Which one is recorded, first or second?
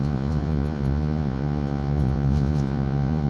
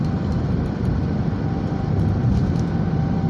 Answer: second